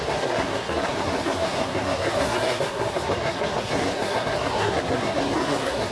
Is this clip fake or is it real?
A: fake